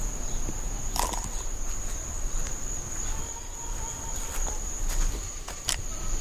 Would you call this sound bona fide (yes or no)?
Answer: yes